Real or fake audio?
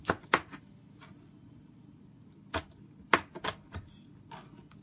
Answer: real